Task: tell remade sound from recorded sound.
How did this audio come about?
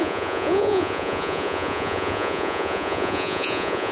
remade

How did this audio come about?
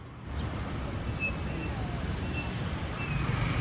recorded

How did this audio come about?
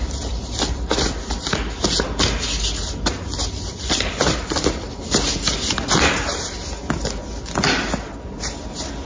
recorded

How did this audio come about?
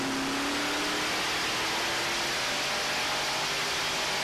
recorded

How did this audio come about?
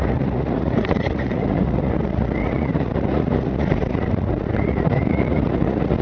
remade